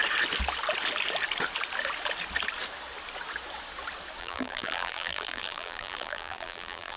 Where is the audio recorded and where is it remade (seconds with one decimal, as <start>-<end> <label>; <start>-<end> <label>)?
0.0-4.2 recorded; 4.2-7.0 remade